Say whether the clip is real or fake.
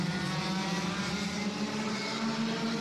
real